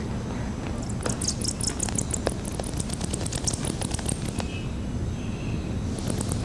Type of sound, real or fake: real